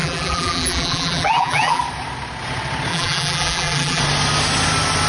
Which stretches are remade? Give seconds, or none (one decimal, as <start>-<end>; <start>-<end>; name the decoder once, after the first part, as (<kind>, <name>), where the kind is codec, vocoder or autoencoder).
0.0-1.8 (vocoder, BigVGAN v2); 2.9-4.0